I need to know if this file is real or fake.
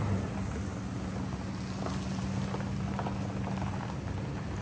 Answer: real